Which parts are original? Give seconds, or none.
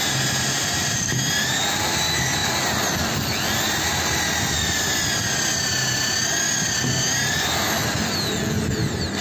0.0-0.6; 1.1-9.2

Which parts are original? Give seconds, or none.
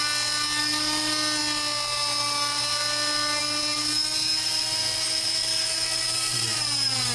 0.0-7.1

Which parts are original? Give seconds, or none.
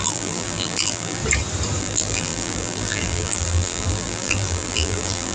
1.2-1.8